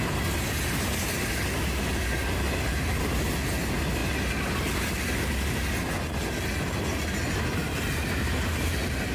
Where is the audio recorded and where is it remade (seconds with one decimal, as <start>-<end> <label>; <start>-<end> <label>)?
0.0-7.6 recorded; 7.6-9.1 remade